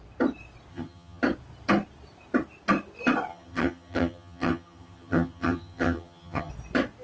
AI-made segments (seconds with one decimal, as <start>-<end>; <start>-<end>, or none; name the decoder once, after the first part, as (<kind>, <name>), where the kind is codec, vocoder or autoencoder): 0.7-1.2 (vocoder, HiFi-GAN); 3.3-6.5

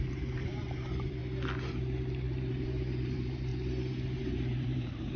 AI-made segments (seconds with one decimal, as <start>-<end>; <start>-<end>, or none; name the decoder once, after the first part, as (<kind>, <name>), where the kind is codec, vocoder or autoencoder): 0.0-1.2 (vocoder, BigVGAN v2); 2.1-3.5; 4.2-5.2

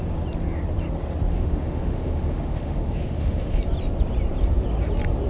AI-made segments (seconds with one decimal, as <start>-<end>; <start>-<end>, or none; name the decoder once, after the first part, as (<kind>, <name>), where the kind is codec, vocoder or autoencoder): 1.3-3.6 (autoencoder, DAC-VAE)

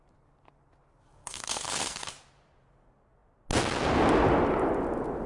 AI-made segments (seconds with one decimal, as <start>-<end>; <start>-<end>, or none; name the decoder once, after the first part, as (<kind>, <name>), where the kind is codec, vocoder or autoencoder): 1.2-2.1 (codec, SNAC)

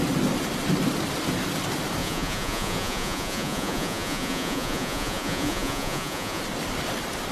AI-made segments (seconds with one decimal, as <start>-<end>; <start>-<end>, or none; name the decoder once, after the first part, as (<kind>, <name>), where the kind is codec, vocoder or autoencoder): 2.0-6.4 (vocoder, Vocos)

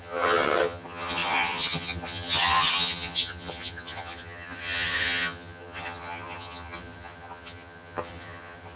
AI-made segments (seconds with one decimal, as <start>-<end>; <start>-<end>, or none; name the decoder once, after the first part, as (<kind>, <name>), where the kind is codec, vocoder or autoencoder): 0.0-8.8 (vocoder, HiFi-GAN)

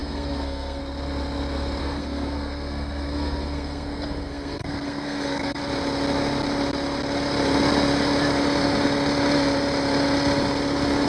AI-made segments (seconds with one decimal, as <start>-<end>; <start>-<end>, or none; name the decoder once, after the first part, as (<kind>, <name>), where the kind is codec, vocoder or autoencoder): 0.0-0.8 (codec, SNAC); 1.8-5.6

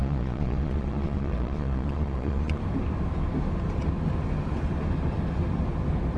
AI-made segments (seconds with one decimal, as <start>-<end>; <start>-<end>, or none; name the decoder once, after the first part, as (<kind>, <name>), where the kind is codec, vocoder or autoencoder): 0.0-2.6 (vocoder, Vocos)